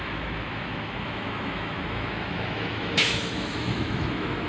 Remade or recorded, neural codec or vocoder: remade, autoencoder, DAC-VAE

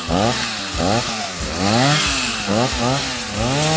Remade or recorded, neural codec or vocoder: recorded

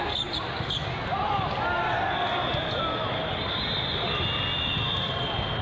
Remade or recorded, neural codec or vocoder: recorded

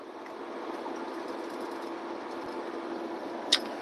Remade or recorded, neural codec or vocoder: recorded